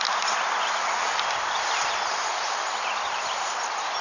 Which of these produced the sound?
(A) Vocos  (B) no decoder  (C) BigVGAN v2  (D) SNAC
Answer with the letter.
B